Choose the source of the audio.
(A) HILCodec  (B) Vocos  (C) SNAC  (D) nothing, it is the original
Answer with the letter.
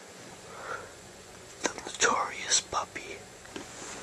B